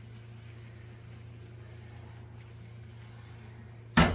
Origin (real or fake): real